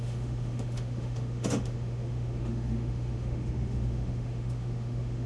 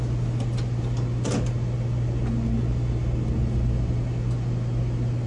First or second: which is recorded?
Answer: second